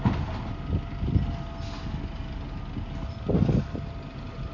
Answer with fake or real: real